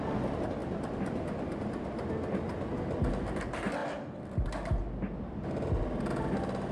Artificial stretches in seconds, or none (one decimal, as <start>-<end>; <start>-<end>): none